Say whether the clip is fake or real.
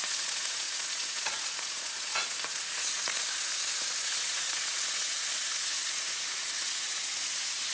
fake